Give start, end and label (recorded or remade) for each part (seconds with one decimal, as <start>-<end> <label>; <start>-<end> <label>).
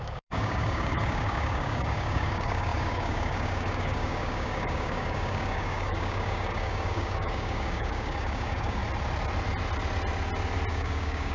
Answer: 0.0-8.8 remade; 8.8-10.7 recorded; 10.7-11.3 remade